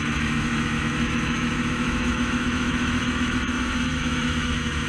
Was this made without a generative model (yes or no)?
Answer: no